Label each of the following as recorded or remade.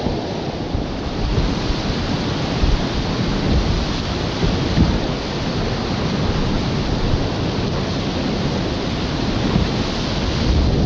recorded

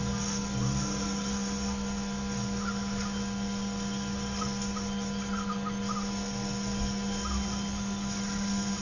recorded